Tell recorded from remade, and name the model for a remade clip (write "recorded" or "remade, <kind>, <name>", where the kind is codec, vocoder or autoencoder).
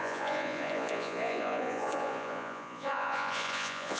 remade, vocoder, Vocos